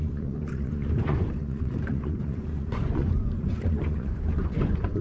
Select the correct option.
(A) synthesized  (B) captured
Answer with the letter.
A